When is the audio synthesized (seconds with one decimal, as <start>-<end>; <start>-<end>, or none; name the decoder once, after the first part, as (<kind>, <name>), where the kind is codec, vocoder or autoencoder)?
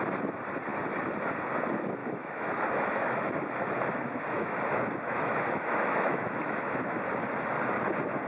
2.0-7.0 (autoencoder, DAC-VAE)